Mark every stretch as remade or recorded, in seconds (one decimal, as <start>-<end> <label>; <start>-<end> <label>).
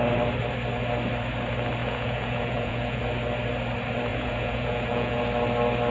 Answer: 0.0-1.8 recorded; 1.8-3.0 remade; 3.0-4.1 recorded; 4.1-5.2 remade; 5.2-5.9 recorded